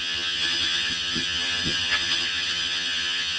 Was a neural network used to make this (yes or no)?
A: yes